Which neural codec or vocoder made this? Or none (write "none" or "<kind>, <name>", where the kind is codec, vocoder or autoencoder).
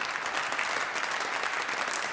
none